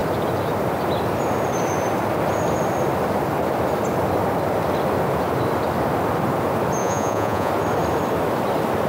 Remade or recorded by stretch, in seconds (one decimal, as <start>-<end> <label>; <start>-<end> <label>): 0.0-6.8 recorded; 6.8-7.5 remade; 7.5-8.9 recorded